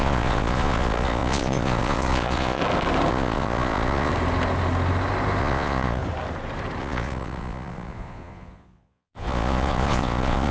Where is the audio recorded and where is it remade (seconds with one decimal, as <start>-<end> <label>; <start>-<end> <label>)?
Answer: 0.0-2.6 remade; 2.6-3.1 recorded; 3.1-4.1 remade; 4.1-5.4 recorded; 5.4-6.0 remade; 6.0-6.8 recorded; 6.8-10.5 remade